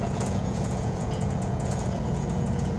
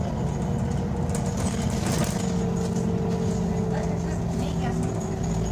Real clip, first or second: second